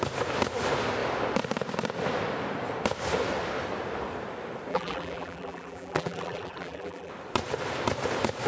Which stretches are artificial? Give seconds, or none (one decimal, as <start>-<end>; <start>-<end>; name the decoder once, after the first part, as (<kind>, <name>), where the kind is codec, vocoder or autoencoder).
4.7-7.1 (vocoder, BigVGAN v2)